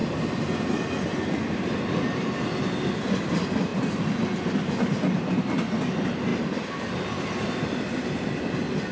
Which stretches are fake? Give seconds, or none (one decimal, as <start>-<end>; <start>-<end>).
none